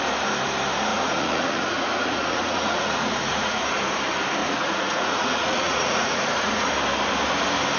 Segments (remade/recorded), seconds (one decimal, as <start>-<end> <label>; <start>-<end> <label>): 0.0-0.9 recorded; 0.9-3.6 remade; 3.6-4.4 recorded; 4.4-6.7 remade; 6.7-7.8 recorded